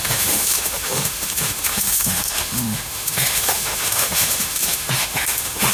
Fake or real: fake